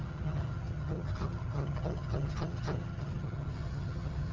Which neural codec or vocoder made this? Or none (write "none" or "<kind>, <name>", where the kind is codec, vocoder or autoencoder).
vocoder, HiFi-GAN